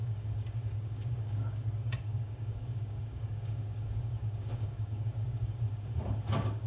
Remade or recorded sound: remade